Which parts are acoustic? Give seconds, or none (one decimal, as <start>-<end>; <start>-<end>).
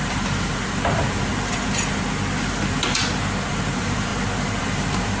1.3-3.5; 4.1-4.6